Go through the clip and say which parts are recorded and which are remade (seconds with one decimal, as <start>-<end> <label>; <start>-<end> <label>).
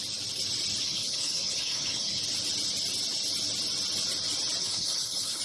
0.0-0.8 recorded; 0.8-2.2 remade; 2.2-4.6 recorded; 4.6-5.4 remade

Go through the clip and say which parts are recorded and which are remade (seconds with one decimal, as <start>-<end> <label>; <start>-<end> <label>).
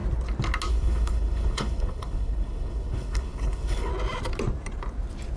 0.0-0.7 recorded; 0.7-3.9 remade; 3.9-5.4 recorded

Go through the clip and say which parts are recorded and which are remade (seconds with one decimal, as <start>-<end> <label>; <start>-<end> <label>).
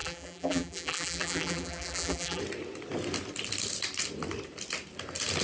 0.0-2.4 remade; 2.4-5.4 recorded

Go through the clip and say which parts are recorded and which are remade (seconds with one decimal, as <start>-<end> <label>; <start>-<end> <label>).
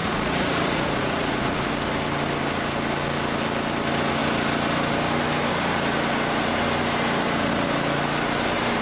0.0-1.7 remade; 1.7-8.8 recorded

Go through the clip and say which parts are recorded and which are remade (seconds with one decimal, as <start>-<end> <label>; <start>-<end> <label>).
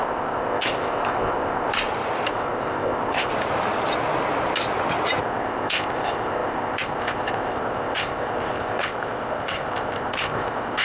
0.0-1.7 remade; 1.7-2.3 recorded; 2.3-3.3 remade; 3.3-5.2 recorded; 5.2-10.8 remade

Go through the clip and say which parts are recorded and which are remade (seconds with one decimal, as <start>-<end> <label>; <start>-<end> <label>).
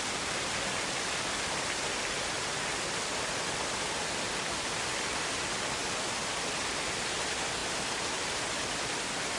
0.0-9.4 recorded